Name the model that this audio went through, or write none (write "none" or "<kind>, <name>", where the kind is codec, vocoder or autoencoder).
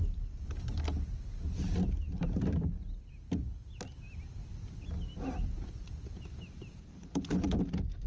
none